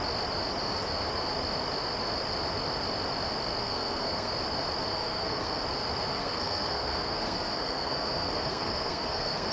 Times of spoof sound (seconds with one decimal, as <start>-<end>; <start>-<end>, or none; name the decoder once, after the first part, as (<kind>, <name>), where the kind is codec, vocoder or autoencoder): 3.6-4.3 (codec, SNAC); 4.9-5.6; 6.1-9.5